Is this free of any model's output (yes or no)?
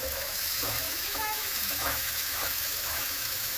no